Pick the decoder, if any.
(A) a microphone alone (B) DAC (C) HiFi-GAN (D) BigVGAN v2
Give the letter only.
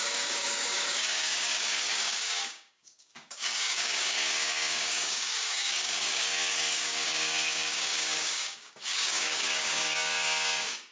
B